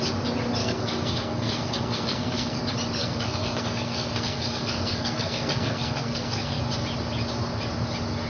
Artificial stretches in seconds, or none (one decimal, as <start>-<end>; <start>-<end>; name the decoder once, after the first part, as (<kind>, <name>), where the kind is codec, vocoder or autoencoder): 0.6-2.6 (codec, SNAC); 3.0-6.6